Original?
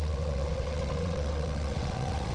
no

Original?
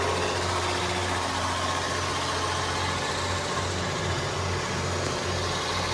yes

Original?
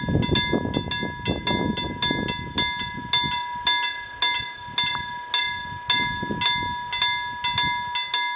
yes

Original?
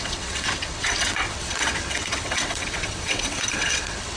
no